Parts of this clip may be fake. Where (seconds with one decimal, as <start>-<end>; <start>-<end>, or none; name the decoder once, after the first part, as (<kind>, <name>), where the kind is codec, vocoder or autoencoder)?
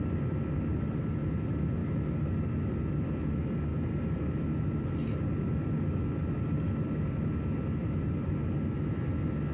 3.7-4.3 (vocoder, BigVGAN v2)